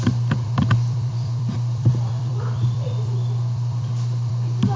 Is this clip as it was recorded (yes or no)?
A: no